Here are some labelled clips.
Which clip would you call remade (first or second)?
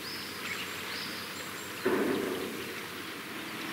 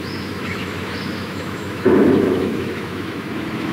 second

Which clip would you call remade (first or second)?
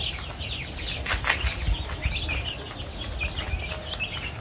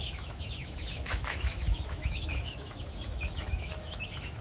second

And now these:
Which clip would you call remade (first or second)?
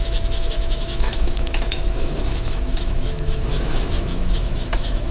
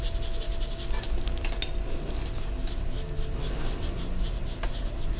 first